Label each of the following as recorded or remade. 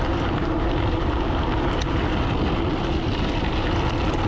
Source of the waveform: recorded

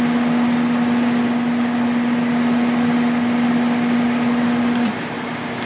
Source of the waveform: recorded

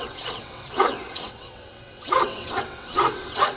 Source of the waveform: remade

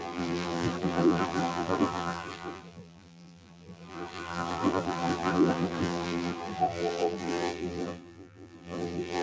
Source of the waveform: remade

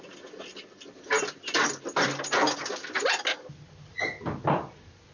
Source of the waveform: recorded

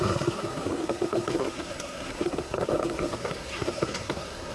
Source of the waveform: remade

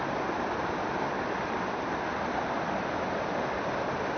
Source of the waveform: recorded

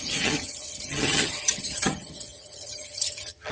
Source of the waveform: remade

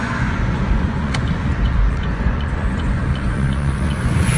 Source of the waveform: remade